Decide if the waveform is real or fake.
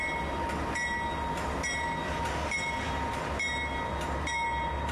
real